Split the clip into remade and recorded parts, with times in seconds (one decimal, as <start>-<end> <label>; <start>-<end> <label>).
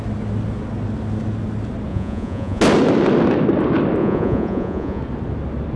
0.0-1.9 recorded; 1.9-2.6 remade; 2.6-4.0 recorded; 4.0-5.0 remade; 5.0-5.8 recorded